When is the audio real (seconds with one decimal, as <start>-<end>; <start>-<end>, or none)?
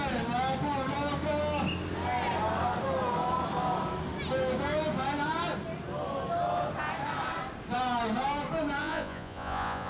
0.0-8.8